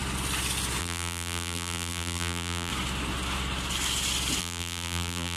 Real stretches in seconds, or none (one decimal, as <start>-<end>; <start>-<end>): 0.0-0.8; 2.7-4.4